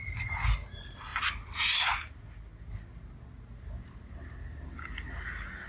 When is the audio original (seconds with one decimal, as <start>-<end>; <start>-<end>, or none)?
0.0-5.7